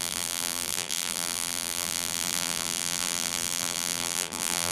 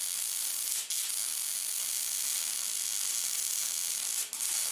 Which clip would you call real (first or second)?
second